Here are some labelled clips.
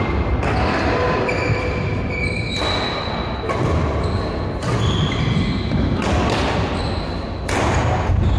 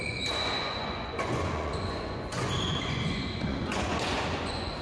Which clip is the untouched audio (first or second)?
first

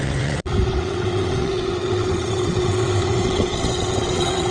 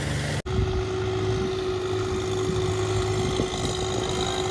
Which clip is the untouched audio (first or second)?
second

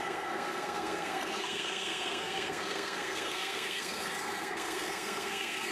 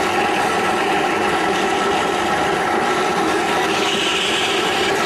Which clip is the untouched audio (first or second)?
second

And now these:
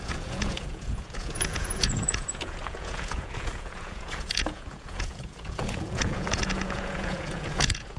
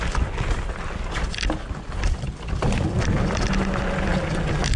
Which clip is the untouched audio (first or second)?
second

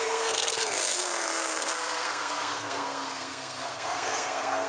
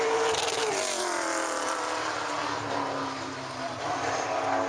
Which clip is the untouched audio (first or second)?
second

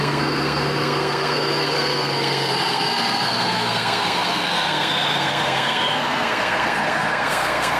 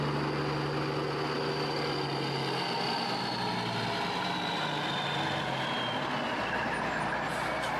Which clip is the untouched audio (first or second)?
second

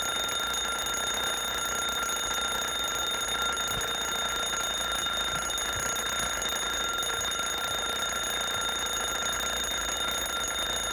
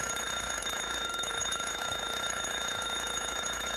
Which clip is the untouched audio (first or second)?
first